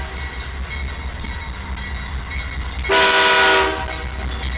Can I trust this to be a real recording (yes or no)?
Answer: yes